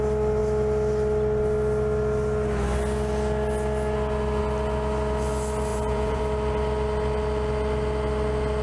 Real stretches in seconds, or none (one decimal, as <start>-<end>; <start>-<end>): 0.0-5.7; 6.2-8.6